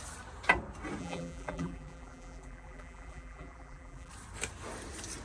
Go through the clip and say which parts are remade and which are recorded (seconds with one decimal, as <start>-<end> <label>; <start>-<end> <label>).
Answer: 0.0-1.0 recorded; 1.0-4.1 remade; 4.1-5.2 recorded